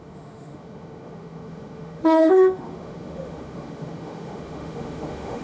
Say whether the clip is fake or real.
fake